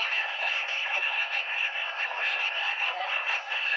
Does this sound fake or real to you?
fake